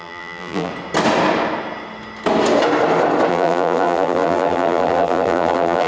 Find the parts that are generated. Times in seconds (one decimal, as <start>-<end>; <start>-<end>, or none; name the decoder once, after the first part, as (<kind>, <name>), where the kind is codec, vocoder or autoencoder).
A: 0.0-0.7 (vocoder, BigVGAN v2); 3.3-5.9